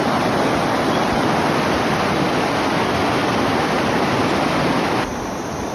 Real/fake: real